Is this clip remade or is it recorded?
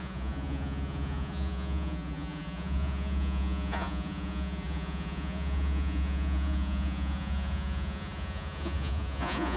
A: remade